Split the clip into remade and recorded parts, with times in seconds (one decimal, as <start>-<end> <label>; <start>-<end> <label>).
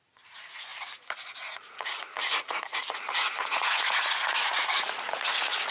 0.0-5.7 remade